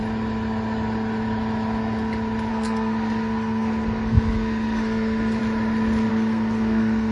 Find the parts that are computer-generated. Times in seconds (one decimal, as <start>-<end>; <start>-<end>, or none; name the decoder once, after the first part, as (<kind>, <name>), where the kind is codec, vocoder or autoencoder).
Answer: 2.5-5.4 (codec, SNAC); 6.1-7.1